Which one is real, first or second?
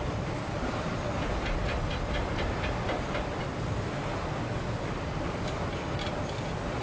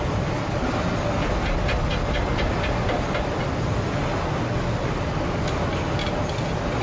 second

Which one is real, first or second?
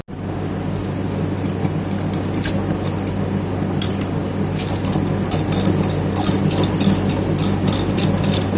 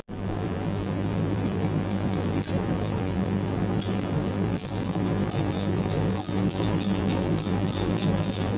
first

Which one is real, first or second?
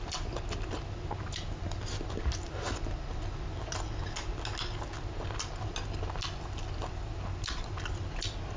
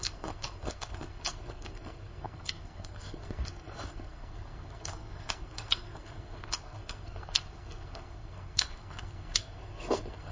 first